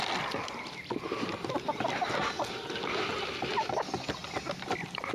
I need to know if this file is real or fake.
real